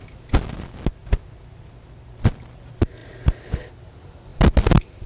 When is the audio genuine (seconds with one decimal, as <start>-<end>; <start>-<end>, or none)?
0.0-5.1